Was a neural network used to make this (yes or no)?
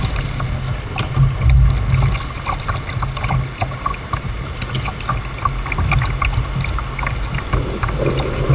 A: no